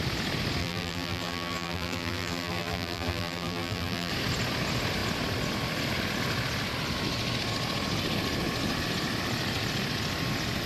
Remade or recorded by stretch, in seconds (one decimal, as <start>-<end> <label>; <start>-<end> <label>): 0.0-0.6 recorded; 0.6-4.1 remade; 4.1-10.7 recorded